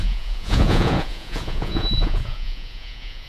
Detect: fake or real fake